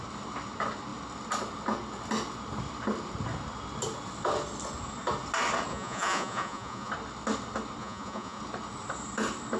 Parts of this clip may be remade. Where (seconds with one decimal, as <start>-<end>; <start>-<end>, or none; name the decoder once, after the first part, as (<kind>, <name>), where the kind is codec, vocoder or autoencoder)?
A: 5.7-6.9 (vocoder, Vocos); 7.8-8.4